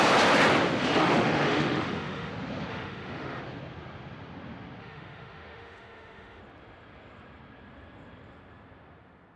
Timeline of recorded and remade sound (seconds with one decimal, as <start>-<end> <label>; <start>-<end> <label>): 0.0-0.8 recorded; 0.8-2.3 remade; 2.3-2.7 recorded; 2.7-3.4 remade; 3.4-4.8 recorded; 4.8-6.4 remade; 6.4-9.4 recorded